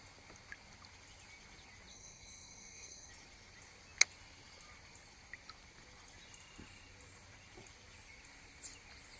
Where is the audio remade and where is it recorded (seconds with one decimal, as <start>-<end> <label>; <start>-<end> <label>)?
0.0-1.9 recorded; 1.9-3.1 remade; 3.1-9.2 recorded